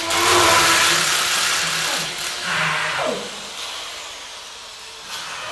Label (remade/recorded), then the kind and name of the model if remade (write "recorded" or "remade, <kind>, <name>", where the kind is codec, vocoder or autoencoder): recorded